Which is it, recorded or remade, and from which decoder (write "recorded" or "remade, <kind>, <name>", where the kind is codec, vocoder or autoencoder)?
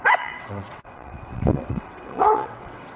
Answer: remade, vocoder, WaveNeXt